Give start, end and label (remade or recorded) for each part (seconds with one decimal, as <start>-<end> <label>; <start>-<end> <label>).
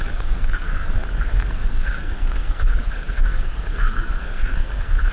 0.0-5.1 remade